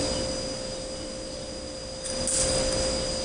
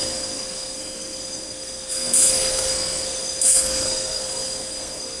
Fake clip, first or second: second